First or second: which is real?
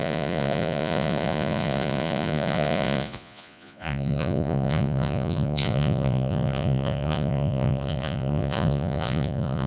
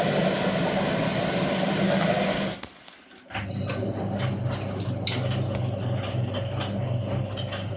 second